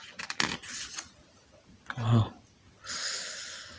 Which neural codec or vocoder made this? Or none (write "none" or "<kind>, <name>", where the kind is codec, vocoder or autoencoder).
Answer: none